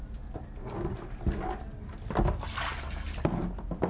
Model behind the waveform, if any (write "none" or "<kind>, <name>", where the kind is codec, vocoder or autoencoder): none